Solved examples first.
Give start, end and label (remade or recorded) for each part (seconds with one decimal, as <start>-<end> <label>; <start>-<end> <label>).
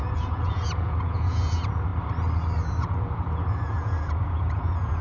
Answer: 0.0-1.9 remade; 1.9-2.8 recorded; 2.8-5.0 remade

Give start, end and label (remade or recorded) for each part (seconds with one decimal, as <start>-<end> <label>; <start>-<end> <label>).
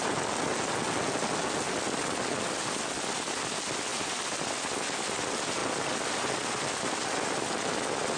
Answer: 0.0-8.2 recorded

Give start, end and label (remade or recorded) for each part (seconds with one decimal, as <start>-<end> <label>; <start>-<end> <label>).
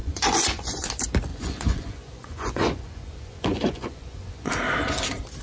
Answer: 0.0-0.9 remade; 0.9-1.3 recorded; 1.3-4.5 remade; 4.5-5.4 recorded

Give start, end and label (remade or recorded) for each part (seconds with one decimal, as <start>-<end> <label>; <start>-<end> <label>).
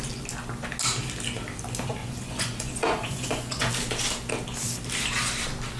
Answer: 0.0-2.0 recorded; 2.0-3.7 remade; 3.7-5.8 recorded